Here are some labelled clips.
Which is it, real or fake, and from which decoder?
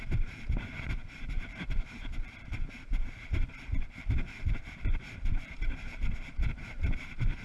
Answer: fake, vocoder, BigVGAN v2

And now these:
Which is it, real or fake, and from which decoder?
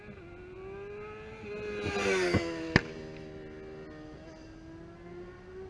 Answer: real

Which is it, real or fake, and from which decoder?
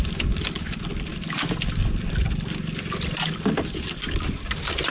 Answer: real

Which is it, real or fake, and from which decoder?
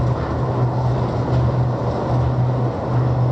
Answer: real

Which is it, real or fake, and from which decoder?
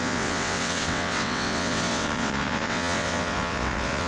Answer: fake, vocoder, WaveNeXt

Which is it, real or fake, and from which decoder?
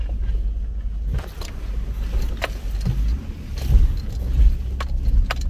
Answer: real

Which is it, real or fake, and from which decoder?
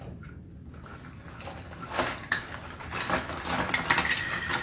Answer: real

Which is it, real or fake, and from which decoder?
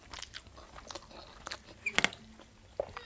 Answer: real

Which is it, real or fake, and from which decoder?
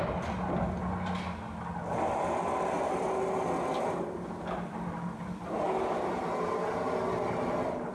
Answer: real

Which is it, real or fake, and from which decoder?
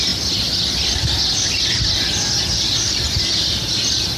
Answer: real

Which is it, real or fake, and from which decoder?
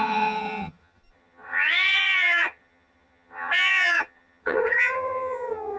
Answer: fake, vocoder, HiFi-GAN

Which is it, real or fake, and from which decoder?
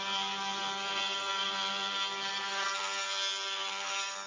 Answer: real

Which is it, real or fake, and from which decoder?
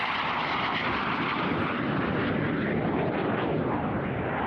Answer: fake, vocoder, BigVGAN v2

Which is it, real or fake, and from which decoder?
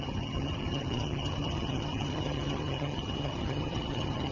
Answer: fake, vocoder, HiFi-GAN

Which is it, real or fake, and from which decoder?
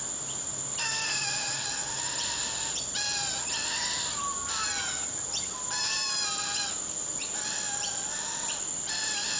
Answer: fake, vocoder, BigVGAN v2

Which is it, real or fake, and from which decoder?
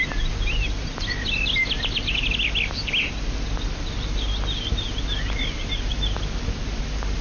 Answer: real